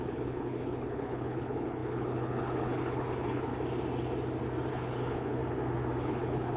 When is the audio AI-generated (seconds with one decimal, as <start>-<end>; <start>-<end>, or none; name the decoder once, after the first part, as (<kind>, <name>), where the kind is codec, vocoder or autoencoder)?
0.0-3.5 (codec, HILCodec); 4.7-5.4; 6.0-6.6